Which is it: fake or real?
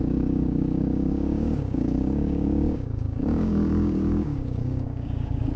fake